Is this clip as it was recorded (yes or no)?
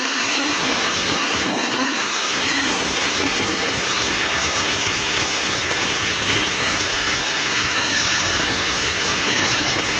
no